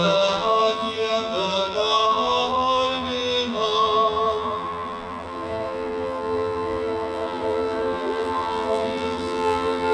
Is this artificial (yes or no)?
yes